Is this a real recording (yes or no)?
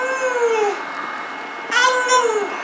yes